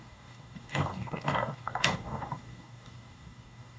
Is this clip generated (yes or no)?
yes